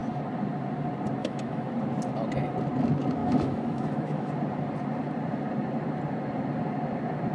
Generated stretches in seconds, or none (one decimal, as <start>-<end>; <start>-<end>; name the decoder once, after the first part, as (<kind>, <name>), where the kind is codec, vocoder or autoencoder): 1.2-1.7 (autoencoder, DAC-VAE); 3.2-4.3